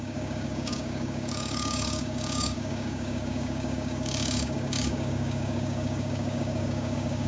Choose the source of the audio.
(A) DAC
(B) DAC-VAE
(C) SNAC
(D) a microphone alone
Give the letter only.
A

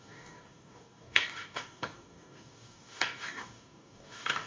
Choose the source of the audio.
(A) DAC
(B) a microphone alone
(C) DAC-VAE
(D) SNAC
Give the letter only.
A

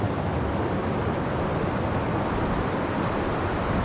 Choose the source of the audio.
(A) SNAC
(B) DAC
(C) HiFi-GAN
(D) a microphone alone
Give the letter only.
D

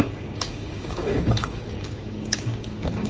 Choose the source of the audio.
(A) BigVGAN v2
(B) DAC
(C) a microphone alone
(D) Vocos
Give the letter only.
B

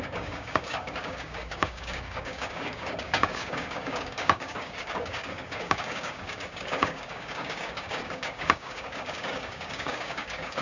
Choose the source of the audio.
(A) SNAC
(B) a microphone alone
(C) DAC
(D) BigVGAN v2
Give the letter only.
C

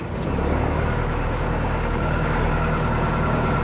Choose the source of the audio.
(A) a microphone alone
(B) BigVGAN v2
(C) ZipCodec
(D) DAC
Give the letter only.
D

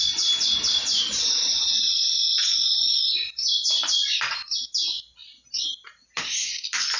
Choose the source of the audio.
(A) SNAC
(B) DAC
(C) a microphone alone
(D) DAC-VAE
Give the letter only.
C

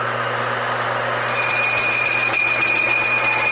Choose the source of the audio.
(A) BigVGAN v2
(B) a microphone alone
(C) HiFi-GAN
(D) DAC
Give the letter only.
B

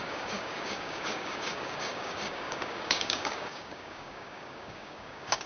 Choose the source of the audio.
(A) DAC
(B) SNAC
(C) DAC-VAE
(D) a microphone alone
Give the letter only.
A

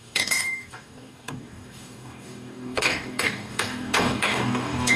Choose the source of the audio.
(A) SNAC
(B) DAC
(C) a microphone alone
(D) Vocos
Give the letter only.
B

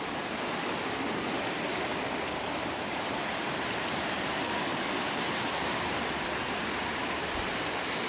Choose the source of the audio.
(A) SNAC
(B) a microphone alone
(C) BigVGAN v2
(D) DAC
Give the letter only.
B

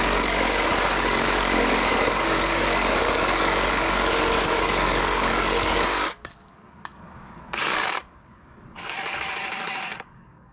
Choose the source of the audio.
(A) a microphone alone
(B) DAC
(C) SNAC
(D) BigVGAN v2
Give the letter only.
B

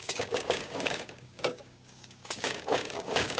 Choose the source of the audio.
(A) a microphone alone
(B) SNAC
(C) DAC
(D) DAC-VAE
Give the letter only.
C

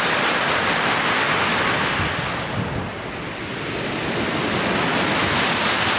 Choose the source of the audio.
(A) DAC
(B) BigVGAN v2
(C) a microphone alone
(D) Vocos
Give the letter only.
C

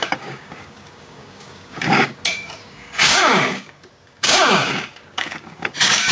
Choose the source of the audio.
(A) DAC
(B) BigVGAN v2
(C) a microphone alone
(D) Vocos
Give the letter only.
A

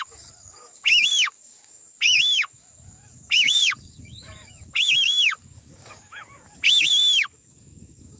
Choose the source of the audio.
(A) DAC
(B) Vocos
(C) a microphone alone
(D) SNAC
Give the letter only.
A